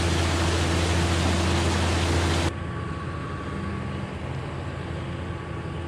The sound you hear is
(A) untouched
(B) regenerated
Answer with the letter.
A